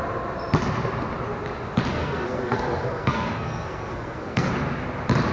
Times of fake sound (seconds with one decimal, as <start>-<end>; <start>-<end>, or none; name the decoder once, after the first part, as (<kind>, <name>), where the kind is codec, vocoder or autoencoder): 1.9-4.5 (codec, SNAC)